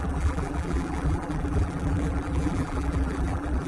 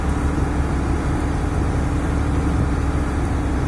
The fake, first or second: first